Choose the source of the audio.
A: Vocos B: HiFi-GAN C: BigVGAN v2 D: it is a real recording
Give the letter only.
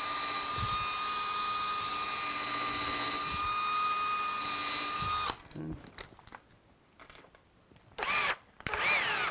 D